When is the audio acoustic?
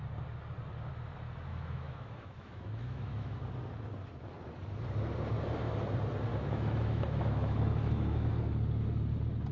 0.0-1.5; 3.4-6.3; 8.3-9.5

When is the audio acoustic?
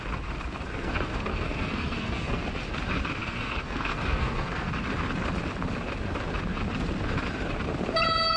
0.0-0.7; 2.4-3.2; 4.7-8.4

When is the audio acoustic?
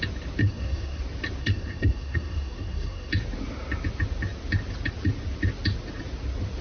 0.0-0.4; 1.0-1.4; 3.1-6.6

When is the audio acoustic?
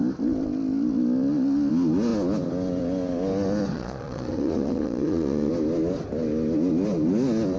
0.0-3.7; 5.5-7.6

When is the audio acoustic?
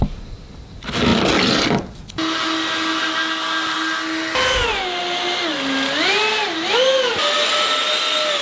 0.0-8.4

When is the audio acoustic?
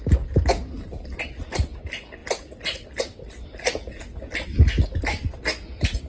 0.0-6.1